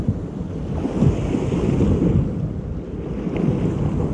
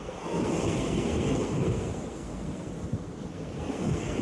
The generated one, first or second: second